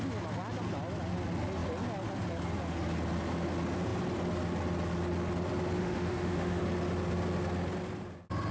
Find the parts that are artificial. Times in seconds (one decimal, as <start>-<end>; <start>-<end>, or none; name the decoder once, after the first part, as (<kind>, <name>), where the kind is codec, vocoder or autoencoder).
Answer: 5.8-6.6 (autoencoder, DAC-VAE)